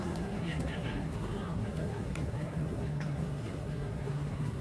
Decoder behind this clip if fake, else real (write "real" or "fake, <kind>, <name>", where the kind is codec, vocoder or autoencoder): fake, codec, SNAC